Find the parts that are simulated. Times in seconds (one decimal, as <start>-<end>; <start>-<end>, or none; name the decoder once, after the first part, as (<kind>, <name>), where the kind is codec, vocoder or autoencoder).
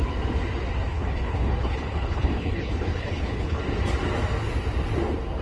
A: 0.9-3.6 (codec, HILCodec)